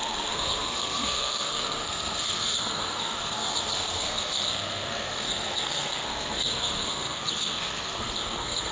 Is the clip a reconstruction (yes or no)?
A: yes